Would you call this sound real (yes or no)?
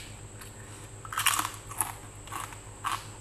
yes